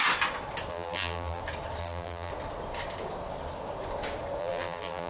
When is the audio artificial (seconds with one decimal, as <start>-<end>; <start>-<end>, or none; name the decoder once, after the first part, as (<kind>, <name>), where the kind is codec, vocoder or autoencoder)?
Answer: 0.7-1.4 (vocoder, BigVGAN v2); 1.8-2.3; 4.4-5.1